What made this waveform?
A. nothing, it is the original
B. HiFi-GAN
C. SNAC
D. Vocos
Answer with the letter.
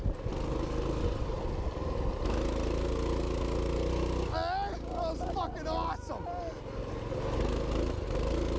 A